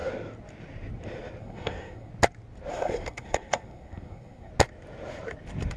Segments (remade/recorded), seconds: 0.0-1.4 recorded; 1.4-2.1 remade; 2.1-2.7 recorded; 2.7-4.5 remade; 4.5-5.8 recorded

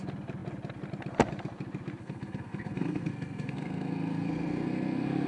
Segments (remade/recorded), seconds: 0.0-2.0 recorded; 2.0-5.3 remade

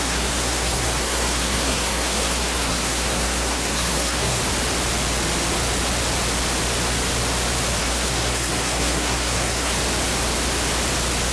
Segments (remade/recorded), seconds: 0.0-4.4 remade; 4.4-7.8 recorded; 7.8-9.7 remade; 9.7-11.3 recorded